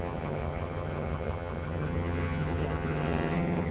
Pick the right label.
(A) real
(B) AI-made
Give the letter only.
B